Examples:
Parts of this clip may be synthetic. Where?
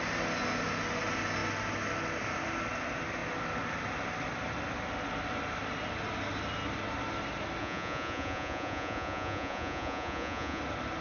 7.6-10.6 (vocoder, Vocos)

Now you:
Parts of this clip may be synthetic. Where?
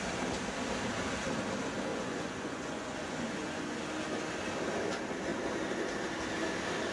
1.9-3.8 (vocoder, Vocos)